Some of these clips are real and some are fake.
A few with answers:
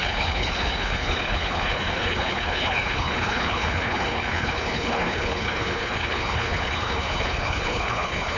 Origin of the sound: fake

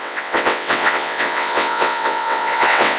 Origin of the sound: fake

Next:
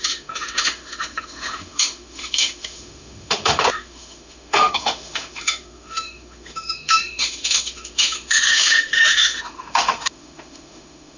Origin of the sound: fake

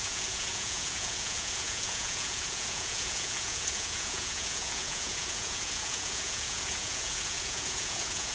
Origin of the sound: fake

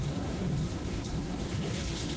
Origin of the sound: fake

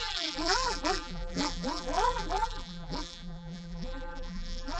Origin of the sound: fake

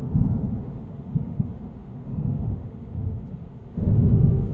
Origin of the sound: fake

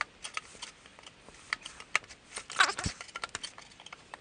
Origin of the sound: real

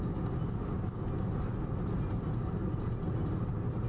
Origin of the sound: real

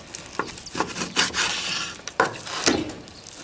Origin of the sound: real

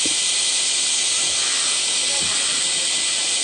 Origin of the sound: real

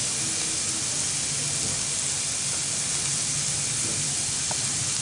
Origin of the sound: real